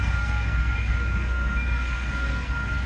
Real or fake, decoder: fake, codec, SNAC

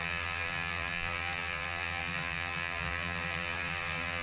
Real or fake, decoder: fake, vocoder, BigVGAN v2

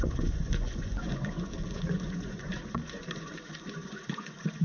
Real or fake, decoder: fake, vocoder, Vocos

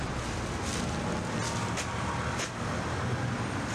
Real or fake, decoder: real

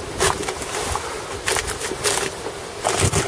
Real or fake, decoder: real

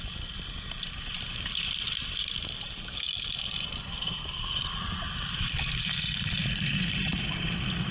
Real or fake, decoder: fake, vocoder, BigVGAN v2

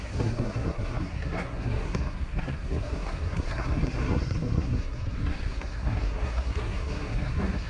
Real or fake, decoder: fake, codec, SNAC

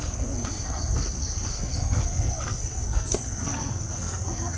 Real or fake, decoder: fake, codec, SNAC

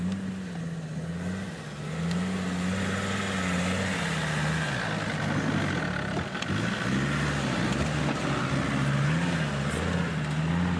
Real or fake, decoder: real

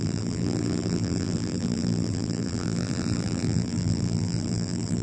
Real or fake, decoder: fake, vocoder, BigVGAN v2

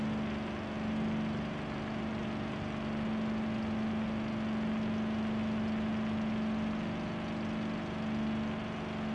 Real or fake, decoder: real